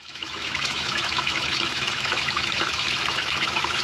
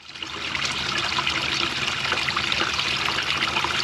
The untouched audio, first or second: second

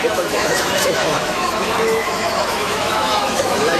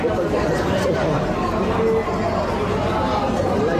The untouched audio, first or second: second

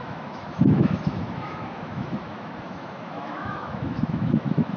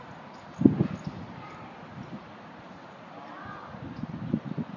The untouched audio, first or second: second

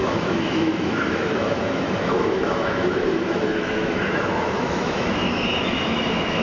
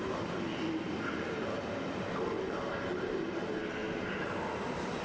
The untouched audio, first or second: second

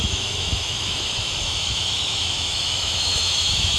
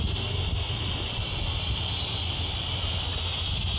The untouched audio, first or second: second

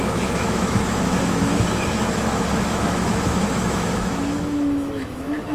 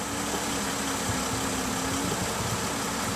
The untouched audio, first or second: second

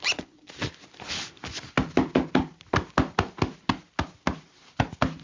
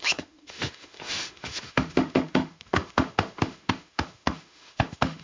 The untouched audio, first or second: first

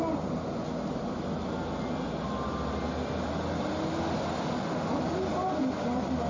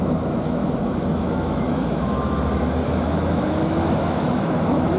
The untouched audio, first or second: first